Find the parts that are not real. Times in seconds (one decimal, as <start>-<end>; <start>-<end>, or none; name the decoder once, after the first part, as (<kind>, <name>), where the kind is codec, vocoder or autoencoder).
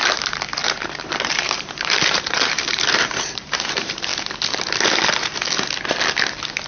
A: 0.0-4.1 (vocoder, BigVGAN v2)